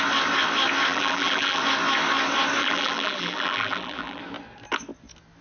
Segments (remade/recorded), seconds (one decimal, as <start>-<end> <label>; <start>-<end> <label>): 0.0-0.9 recorded; 0.9-1.6 remade; 1.6-2.6 recorded; 2.6-4.2 remade; 4.2-5.4 recorded